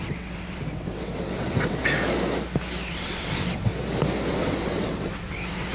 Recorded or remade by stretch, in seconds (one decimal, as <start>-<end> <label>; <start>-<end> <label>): 0.0-1.8 remade; 1.8-2.9 recorded; 2.9-3.7 remade; 3.7-4.3 recorded; 4.3-5.7 remade